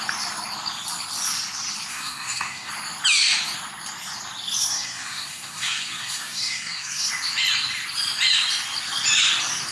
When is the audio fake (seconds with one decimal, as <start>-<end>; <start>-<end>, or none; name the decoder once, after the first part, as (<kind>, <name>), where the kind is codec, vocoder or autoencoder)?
1.9-2.7 (codec, SNAC); 4.6-7.1